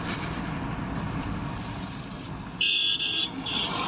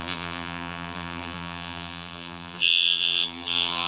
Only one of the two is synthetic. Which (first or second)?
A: second